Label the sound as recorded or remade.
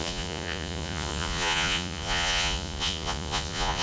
remade